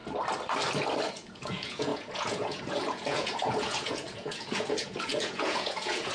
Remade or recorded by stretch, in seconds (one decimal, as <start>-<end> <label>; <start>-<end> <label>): 0.0-1.1 recorded; 1.1-6.1 remade